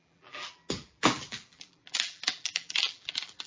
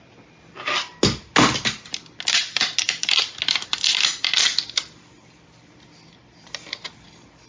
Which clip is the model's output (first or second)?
first